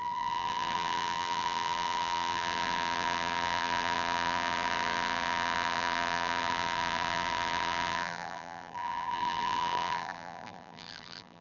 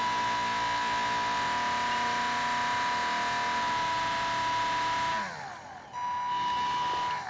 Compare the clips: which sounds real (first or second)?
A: second